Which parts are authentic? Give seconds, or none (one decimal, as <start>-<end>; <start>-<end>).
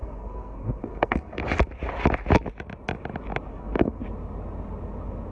1.4-3.5; 4.0-5.3